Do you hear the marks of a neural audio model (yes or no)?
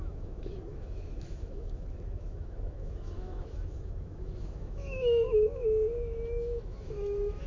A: yes